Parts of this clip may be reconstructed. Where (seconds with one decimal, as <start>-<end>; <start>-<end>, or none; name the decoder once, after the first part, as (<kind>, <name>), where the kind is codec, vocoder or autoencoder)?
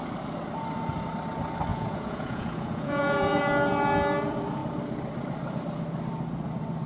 1.7-3.4 (vocoder, Vocos)